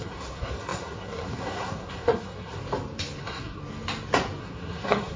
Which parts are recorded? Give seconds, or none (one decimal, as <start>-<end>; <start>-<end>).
2.6-3.2; 3.6-4.4